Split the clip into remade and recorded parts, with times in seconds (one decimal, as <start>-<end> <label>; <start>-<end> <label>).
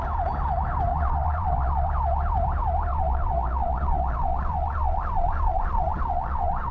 0.0-0.9 recorded; 0.9-1.9 remade; 1.9-2.9 recorded; 2.9-6.7 remade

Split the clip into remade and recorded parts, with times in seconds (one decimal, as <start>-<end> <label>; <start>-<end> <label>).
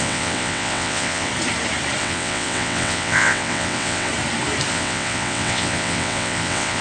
0.0-1.3 remade; 1.3-2.0 recorded; 2.0-4.1 remade; 4.1-4.7 recorded; 4.7-6.8 remade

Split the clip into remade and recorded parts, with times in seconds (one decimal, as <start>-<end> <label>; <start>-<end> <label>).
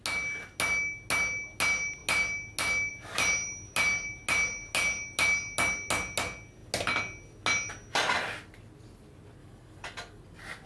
0.0-9.4 recorded; 9.4-10.2 remade; 10.2-10.7 recorded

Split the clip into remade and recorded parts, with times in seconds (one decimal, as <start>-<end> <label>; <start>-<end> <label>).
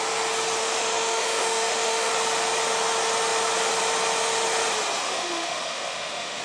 0.0-0.6 recorded; 0.6-2.1 remade; 2.1-5.0 recorded; 5.0-6.4 remade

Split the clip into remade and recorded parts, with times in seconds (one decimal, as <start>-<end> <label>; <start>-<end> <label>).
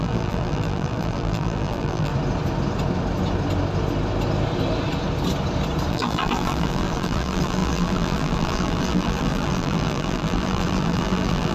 0.0-2.1 remade; 2.1-5.9 recorded; 5.9-11.5 remade